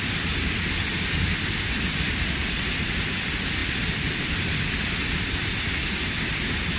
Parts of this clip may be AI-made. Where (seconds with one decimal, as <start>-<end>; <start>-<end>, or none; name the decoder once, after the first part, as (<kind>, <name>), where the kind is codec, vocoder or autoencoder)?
none